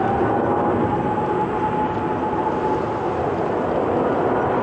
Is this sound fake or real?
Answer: real